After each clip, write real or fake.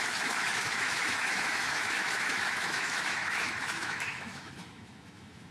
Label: fake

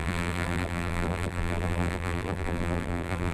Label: fake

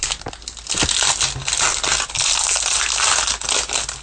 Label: real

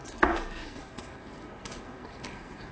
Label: fake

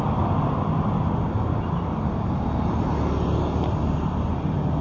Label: real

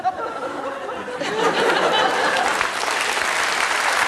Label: real